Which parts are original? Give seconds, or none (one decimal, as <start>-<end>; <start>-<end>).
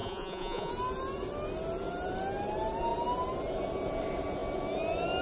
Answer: 0.7-5.2